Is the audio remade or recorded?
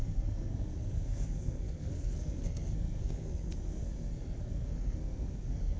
remade